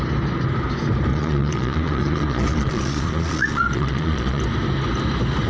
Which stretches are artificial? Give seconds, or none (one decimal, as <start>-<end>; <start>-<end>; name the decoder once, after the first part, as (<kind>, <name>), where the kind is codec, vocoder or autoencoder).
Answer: 1.1-4.4 (vocoder, Vocos)